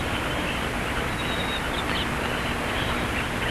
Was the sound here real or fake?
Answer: real